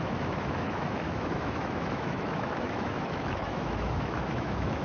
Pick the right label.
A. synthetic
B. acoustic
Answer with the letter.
A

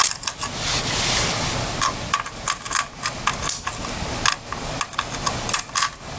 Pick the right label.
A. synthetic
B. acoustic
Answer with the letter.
B